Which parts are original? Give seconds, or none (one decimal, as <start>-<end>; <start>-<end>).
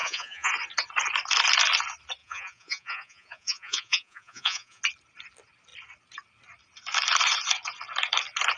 0.5-2.2; 4.8-8.6